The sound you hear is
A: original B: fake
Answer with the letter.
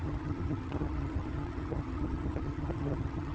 B